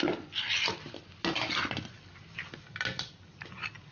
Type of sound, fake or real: real